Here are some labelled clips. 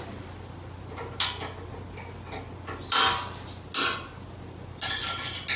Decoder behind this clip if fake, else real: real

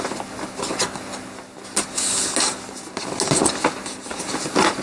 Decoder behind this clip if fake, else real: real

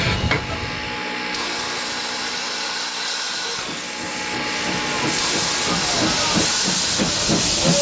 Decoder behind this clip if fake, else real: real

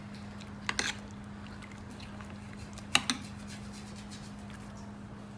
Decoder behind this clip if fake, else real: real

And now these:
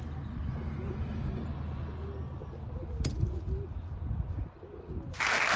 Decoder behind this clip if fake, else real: real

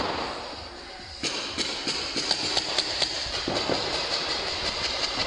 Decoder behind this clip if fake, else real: real